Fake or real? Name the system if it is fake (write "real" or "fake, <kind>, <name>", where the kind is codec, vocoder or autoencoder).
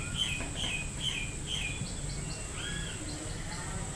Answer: real